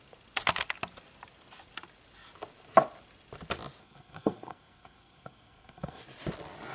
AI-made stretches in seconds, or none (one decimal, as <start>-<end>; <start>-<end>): 3.8-6.0